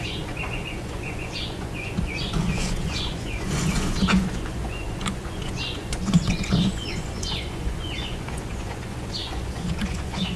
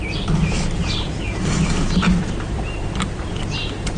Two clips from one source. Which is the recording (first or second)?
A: second